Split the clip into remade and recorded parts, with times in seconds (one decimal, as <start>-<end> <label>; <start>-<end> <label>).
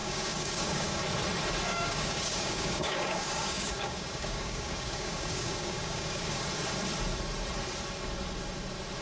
0.0-1.0 remade; 1.0-1.7 recorded; 1.7-6.5 remade; 6.5-9.0 recorded